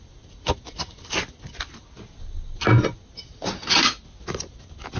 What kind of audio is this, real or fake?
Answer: real